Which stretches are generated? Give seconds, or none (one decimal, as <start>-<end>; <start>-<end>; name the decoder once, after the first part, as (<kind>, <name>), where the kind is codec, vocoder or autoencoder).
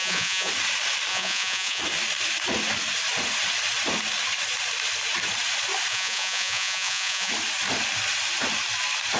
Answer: 0.0-0.5 (vocoder, Vocos); 1.1-1.8; 5.9-7.3